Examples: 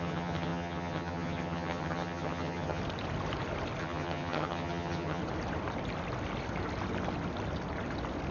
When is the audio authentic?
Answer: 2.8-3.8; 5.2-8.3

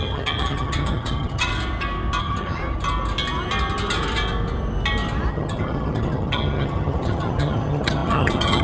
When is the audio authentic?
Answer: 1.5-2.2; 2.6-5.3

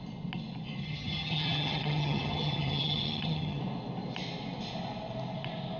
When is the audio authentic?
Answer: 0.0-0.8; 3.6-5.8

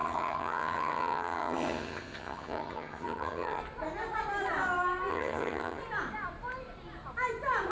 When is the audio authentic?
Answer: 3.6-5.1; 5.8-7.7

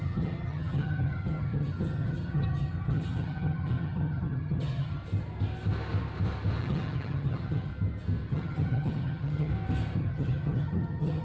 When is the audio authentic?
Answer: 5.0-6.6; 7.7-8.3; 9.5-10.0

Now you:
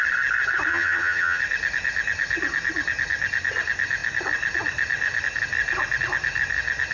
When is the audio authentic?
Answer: 0.0-0.7; 1.4-6.9

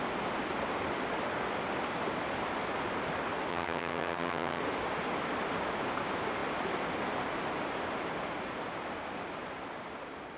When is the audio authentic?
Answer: 0.0-3.5; 4.6-10.4

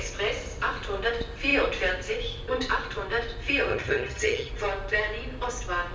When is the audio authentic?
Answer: 0.0-3.7; 4.5-5.9